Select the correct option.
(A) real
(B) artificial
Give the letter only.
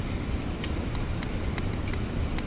A